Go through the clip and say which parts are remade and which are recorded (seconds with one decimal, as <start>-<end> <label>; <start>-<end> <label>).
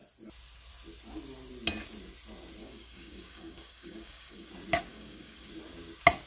0.0-2.6 recorded; 2.6-4.5 remade; 4.5-4.9 recorded; 4.9-5.5 remade; 5.5-6.3 recorded